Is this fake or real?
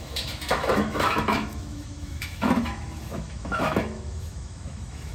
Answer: fake